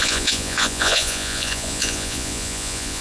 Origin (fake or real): fake